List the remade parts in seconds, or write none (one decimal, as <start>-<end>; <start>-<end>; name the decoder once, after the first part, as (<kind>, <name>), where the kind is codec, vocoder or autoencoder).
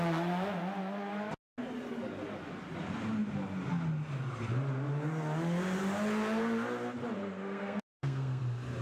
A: 7.2-8.4 (codec, SNAC)